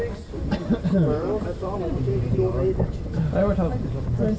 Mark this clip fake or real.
real